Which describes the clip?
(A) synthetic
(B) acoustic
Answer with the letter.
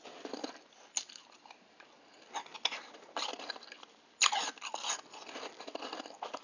B